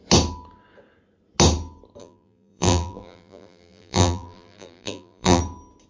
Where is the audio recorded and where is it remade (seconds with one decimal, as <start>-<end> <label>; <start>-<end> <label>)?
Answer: 0.0-2.0 recorded; 2.0-5.4 remade; 5.4-5.9 recorded